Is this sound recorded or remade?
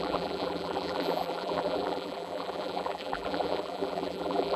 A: remade